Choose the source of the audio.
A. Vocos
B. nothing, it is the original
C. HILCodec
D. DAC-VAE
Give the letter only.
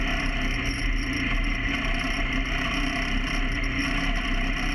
B